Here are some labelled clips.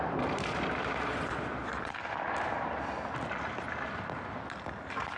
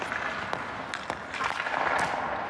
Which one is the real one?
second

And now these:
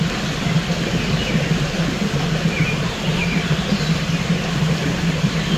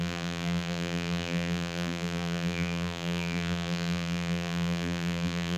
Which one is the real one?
first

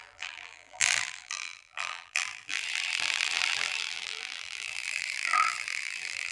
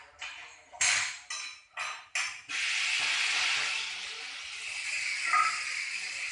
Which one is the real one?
second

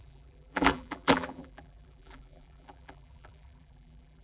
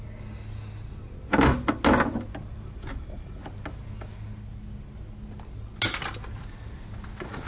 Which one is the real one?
second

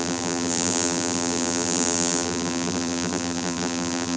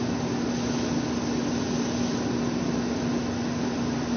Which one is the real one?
second